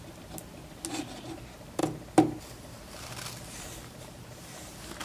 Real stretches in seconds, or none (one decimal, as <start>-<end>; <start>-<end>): 0.0-5.0